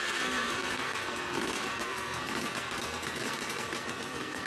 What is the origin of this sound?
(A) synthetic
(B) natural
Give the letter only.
A